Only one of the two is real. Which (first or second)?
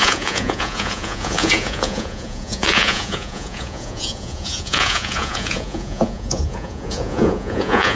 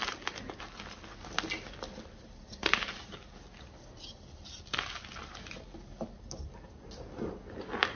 second